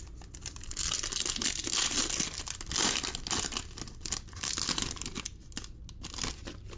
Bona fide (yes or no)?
yes